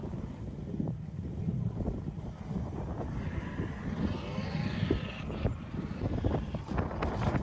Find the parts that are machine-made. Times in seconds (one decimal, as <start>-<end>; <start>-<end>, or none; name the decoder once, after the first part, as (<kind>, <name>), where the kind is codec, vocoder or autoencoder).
0.0-1.5 (vocoder, BigVGAN v2); 5.9-7.4